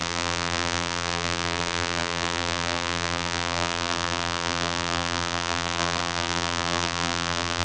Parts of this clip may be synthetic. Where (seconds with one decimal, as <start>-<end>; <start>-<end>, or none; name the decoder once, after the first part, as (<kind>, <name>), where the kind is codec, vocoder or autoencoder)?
0.0-7.6 (vocoder, BigVGAN v2)